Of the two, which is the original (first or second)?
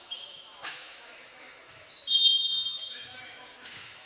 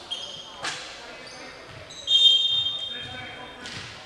second